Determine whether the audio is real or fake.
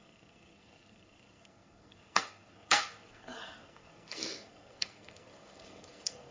fake